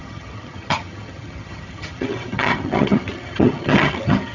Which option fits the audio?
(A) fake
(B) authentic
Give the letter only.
A